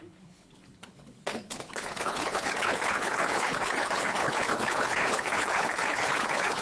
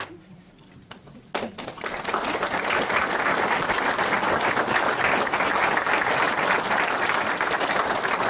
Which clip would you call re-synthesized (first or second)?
first